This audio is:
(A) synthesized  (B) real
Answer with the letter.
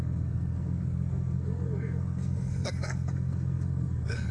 A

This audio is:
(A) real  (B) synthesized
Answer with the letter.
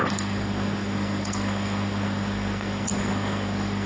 B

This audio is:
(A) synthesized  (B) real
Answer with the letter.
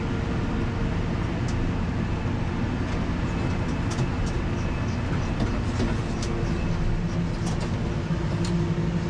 B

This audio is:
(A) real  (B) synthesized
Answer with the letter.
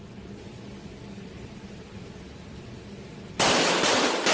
A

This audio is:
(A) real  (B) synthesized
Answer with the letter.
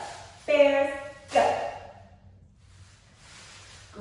A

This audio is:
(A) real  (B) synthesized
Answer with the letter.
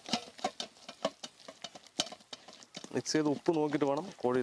A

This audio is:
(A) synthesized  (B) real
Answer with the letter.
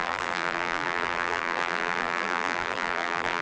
A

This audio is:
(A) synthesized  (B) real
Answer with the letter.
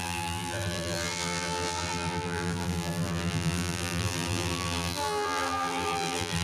A